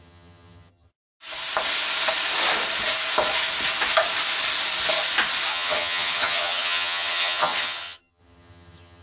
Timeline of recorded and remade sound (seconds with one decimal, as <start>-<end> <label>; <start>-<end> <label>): 0.0-0.9 remade; 0.9-5.5 recorded; 5.5-9.0 remade